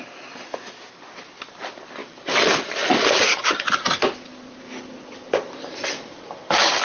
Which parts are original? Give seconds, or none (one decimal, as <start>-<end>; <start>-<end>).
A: 0.0-2.0; 3.5-6.8